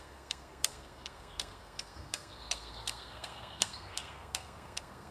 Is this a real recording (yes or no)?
no